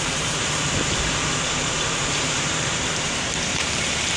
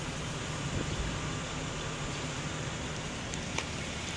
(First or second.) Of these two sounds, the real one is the second